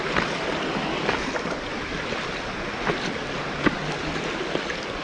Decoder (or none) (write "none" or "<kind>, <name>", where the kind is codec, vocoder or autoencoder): vocoder, BigVGAN v2